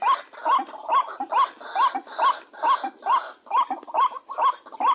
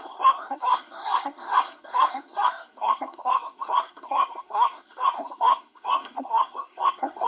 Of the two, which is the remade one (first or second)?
second